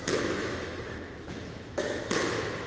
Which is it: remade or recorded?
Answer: remade